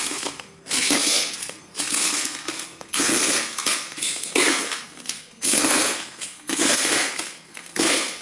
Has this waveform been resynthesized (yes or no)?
yes